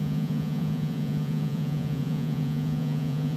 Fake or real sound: fake